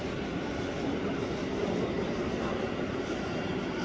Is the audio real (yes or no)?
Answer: yes